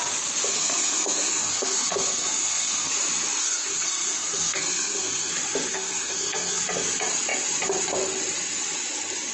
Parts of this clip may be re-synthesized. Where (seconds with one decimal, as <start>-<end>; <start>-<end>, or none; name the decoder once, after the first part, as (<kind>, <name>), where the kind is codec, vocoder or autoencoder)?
0.5-2.9 (codec, SNAC); 3.4-5.3; 5.7-6.6